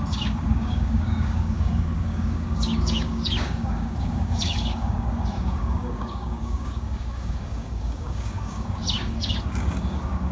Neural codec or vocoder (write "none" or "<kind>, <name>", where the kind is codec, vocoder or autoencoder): codec, DAC